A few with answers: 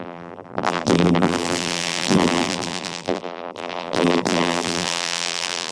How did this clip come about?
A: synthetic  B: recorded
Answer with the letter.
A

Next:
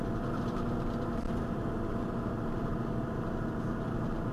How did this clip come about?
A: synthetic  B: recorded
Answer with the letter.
A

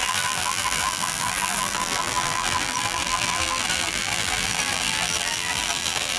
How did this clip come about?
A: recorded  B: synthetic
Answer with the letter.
B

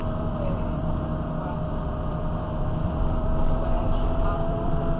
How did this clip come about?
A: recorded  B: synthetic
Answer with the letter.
B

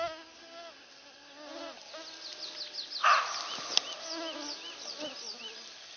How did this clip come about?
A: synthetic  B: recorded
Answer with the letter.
B